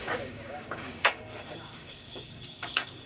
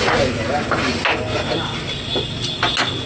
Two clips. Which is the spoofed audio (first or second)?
first